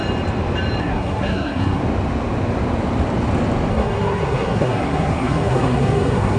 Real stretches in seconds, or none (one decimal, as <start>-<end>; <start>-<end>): 0.0-0.8; 1.8-3.7